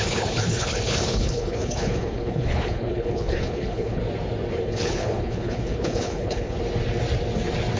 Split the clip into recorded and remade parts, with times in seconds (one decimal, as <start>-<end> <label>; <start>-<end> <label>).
0.0-4.0 remade; 4.0-4.5 recorded; 4.5-6.6 remade; 6.6-7.8 recorded

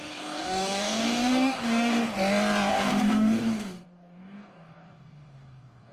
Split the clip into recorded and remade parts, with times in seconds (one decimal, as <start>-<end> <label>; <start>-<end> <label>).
0.0-2.0 remade; 2.0-2.7 recorded; 2.7-5.9 remade

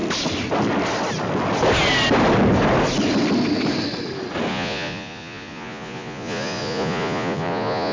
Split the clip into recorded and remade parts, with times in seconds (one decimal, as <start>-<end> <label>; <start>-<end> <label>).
0.0-4.5 recorded; 4.5-7.9 remade

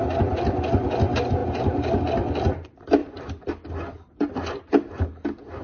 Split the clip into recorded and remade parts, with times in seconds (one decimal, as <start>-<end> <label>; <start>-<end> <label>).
0.0-5.6 recorded